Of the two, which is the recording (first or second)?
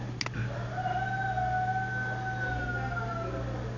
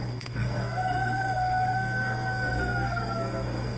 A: first